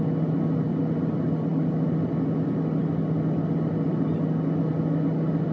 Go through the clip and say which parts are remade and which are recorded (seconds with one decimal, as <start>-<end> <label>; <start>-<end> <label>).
0.0-5.5 recorded